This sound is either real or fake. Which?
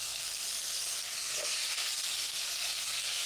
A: fake